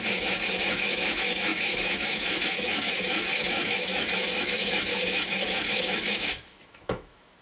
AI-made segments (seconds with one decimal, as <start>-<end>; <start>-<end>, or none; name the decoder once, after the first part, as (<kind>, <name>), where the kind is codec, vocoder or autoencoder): 0.0-7.4 (autoencoder, DAC-VAE)